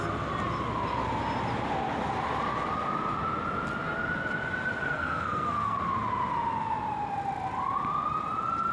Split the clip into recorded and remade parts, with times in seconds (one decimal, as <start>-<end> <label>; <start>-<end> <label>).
0.0-4.8 recorded; 4.8-5.8 remade; 5.8-8.7 recorded